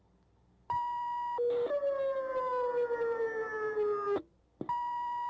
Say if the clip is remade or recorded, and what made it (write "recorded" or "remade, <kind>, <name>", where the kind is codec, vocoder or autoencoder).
recorded